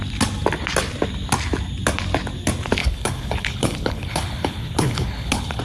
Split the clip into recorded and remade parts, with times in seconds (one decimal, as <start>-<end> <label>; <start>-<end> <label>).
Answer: 0.0-2.8 recorded; 2.8-5.6 remade